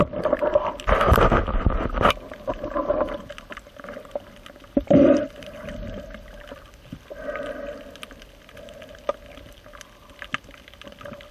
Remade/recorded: recorded